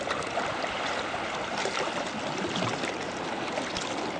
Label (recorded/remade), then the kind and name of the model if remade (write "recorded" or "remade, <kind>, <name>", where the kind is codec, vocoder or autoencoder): recorded